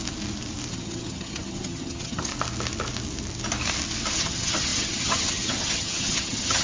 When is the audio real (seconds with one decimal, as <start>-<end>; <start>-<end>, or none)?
0.0-0.7; 2.3-4.1

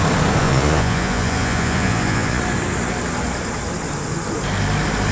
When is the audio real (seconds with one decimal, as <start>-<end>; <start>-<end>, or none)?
0.0-0.4; 2.4-5.1

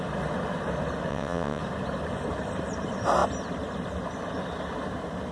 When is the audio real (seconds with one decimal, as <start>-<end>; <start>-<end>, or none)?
0.0-1.1; 1.6-5.3

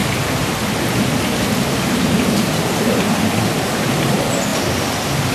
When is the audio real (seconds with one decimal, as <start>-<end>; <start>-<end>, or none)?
none

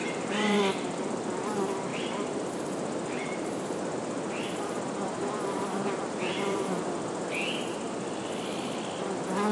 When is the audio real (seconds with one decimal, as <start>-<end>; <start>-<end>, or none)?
0.6-1.9; 6.9-9.5

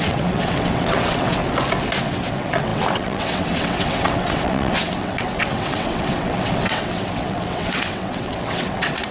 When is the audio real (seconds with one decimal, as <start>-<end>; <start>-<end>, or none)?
1.4-2.0

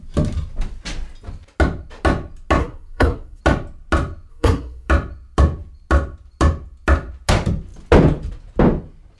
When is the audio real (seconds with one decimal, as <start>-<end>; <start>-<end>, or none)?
0.0-2.6; 3.4-4.3; 4.9-9.2

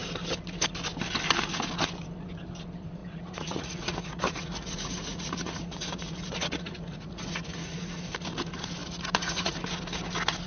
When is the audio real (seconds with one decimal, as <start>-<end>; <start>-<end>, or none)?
0.0-3.0; 8.0-8.8; 9.5-10.5